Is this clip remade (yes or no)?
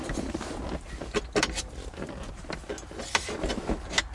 no